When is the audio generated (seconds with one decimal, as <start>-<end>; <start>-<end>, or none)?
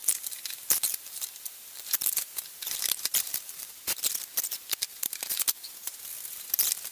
0.0-3.7; 4.9-5.9